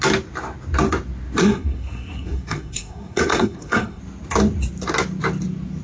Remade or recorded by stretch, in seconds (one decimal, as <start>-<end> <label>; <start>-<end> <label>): 0.0-1.4 recorded; 1.4-4.0 remade; 4.0-5.8 recorded